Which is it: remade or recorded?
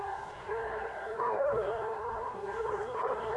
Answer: remade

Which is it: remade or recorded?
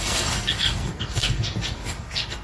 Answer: remade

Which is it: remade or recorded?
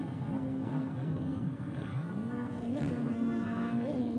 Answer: remade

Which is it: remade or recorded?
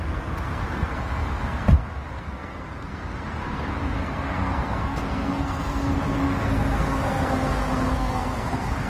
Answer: remade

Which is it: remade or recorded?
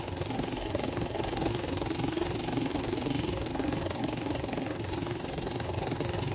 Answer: remade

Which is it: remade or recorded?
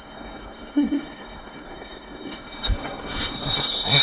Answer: remade